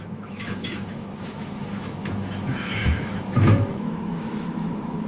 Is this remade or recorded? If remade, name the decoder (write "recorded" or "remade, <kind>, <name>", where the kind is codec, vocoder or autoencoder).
remade, autoencoder, DAC-VAE